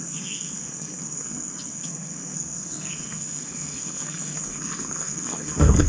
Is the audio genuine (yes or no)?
no